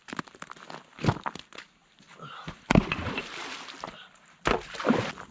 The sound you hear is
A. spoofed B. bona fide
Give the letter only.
B